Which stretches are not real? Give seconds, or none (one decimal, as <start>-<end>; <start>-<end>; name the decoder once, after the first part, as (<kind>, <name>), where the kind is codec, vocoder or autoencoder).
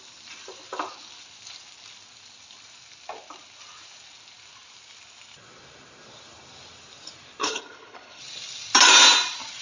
7.4-8.2 (codec, HILCodec)